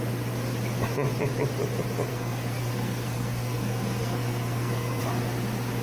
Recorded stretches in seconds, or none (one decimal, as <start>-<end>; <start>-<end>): 0.0-2.1; 5.0-5.8